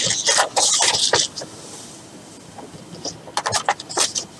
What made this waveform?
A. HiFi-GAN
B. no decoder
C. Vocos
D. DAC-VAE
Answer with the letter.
B